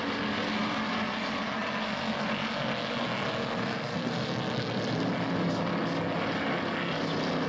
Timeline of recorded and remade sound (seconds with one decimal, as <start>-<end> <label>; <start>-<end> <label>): 0.0-3.6 recorded; 3.6-4.1 remade; 4.1-7.5 recorded